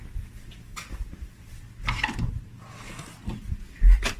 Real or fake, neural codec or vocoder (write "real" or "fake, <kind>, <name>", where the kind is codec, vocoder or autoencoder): real